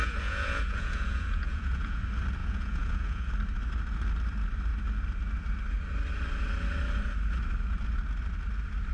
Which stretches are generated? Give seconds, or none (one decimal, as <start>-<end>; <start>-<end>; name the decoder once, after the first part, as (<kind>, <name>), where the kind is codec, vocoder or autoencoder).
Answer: 0.0-2.0 (vocoder, Vocos); 2.4-3.3